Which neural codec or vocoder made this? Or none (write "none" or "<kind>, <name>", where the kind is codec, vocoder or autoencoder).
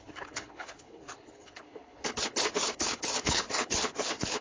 codec, HILCodec